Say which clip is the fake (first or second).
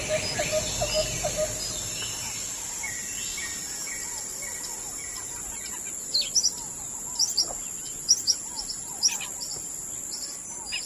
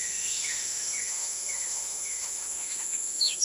second